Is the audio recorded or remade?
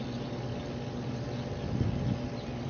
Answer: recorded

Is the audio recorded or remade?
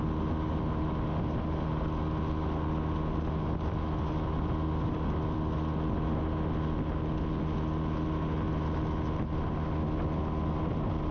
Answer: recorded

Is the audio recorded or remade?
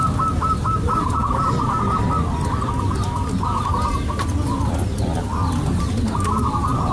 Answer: recorded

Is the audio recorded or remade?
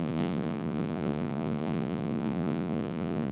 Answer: remade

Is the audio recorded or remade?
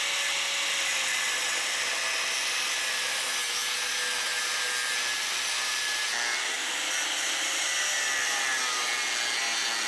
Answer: recorded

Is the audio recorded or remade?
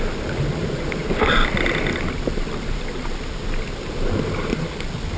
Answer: recorded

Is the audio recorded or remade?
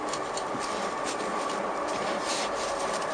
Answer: recorded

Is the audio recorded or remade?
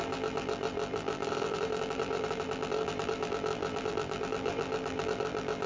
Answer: remade